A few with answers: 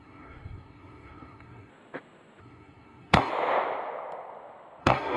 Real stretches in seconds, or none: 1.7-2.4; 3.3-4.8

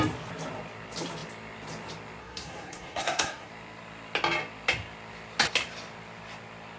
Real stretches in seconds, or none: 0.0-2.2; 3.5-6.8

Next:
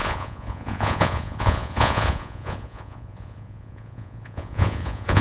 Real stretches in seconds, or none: none

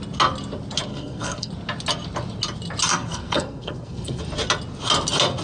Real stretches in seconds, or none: 0.0-0.9; 1.5-2.9; 4.2-5.4

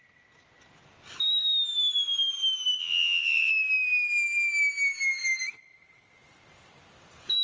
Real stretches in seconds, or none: 0.0-2.8; 3.5-7.4

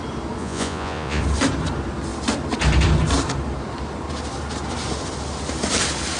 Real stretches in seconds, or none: 0.0-0.4; 1.2-6.2